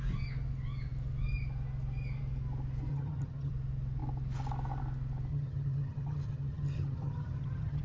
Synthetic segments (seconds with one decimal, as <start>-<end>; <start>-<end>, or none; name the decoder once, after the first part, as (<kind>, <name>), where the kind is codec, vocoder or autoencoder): 2.9-3.5 (vocoder, HiFi-GAN); 5.3-7.8